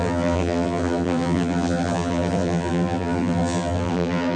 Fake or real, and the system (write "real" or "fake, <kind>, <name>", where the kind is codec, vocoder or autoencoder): fake, vocoder, BigVGAN v2